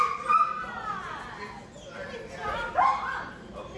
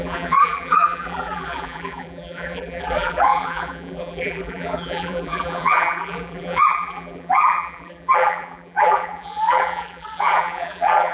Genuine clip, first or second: first